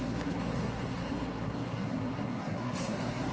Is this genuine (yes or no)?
no